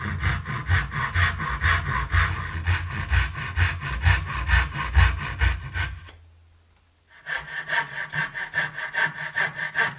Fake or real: real